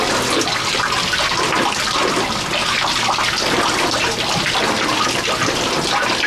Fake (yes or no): no